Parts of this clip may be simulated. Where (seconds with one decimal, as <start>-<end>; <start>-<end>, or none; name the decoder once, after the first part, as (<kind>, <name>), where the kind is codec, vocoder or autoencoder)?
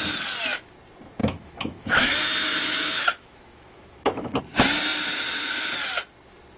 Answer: 1.2-4.4 (autoencoder, DAC-VAE)